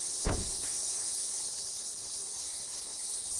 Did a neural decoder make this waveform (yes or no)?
yes